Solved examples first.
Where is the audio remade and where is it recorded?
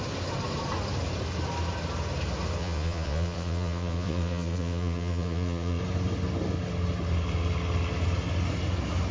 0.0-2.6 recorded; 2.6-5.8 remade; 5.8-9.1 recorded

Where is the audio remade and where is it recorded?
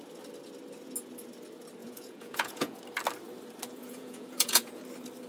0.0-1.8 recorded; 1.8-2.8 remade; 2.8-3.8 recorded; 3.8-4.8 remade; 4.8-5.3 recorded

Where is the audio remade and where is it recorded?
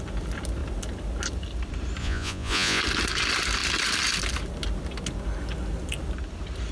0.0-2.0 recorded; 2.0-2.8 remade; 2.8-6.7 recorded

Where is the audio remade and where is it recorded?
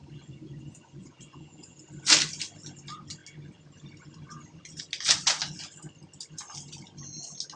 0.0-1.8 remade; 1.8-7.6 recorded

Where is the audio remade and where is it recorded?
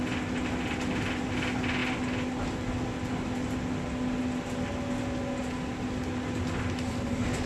0.0-7.5 recorded